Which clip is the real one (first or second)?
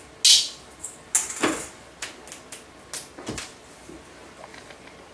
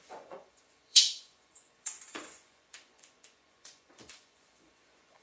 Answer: first